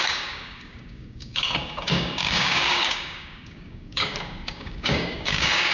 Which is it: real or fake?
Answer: fake